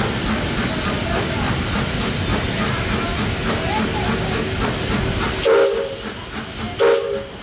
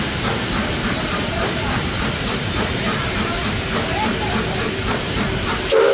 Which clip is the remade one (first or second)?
second